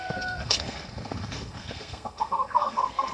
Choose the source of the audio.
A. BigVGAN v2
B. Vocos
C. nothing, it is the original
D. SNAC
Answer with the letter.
D